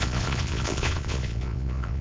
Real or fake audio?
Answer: fake